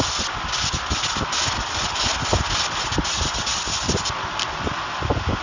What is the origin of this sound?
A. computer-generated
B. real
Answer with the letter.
B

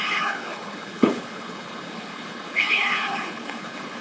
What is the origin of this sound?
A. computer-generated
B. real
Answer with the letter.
A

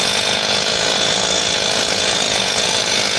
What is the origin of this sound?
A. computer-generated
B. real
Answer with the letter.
A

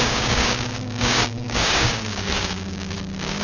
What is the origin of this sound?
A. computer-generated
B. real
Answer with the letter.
A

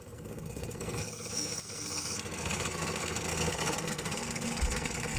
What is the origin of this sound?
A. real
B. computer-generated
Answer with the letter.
B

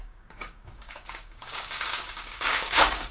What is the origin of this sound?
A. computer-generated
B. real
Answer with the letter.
A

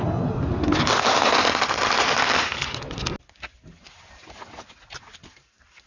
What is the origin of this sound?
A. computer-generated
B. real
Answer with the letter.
B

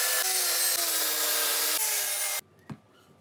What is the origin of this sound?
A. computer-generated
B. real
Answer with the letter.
B